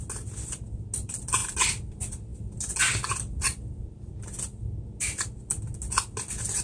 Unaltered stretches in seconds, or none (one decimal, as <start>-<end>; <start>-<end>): 0.0-6.6